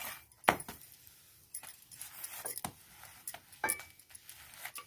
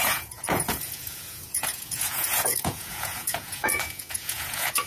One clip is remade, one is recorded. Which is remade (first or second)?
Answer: second